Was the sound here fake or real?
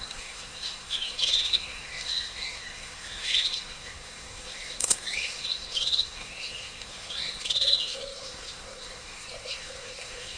fake